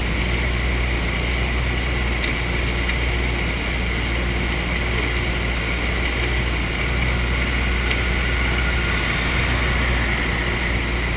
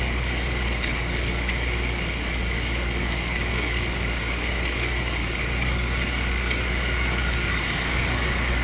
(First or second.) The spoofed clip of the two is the second